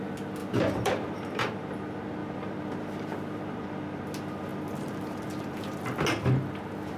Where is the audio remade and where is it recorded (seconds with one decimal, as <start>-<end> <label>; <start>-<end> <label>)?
0.0-0.4 recorded; 0.4-1.7 remade; 1.7-2.2 recorded; 2.2-4.0 remade; 4.0-4.5 recorded; 4.5-5.6 remade; 5.6-7.0 recorded